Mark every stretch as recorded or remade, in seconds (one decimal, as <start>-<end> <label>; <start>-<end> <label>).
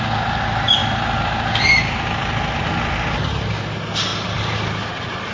0.0-4.1 recorded; 4.1-5.3 remade